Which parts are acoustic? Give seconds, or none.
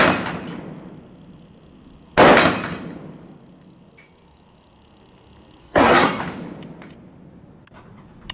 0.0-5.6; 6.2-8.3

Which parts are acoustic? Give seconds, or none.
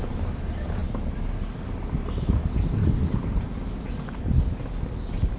0.0-5.4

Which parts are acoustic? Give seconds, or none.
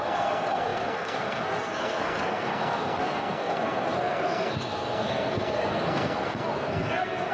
none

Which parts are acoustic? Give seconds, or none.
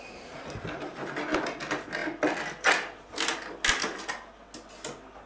0.0-2.0; 3.2-5.3